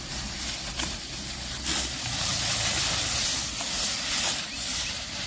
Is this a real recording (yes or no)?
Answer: yes